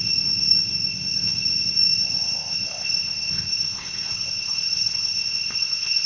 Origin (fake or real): fake